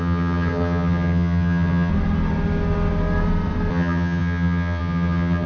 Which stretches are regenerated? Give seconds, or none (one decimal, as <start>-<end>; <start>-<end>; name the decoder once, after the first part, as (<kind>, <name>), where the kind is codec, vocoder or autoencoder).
0.0-1.9 (vocoder, HiFi-GAN); 3.7-5.5

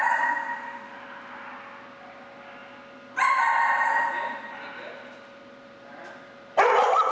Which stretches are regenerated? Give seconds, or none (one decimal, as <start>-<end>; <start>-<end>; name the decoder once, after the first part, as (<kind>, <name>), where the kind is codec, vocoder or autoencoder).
none

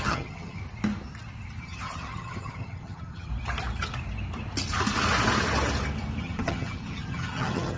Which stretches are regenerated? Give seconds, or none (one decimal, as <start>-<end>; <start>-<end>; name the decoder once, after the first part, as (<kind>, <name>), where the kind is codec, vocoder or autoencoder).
0.0-0.6 (vocoder, HiFi-GAN); 1.6-3.3; 6.2-7.8